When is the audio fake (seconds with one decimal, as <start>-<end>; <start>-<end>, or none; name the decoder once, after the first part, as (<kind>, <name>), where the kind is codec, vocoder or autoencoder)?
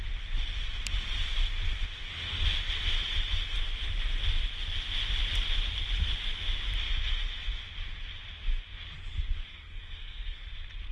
9.1-10.5 (codec, SNAC)